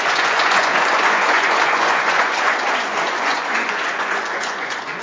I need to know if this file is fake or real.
fake